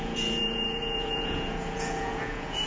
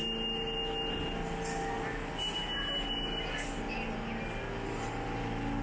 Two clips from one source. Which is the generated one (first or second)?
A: first